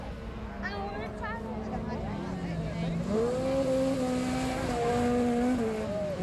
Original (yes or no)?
yes